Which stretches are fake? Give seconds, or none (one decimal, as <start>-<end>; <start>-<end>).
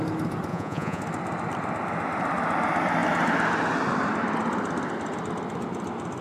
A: 0.5-1.0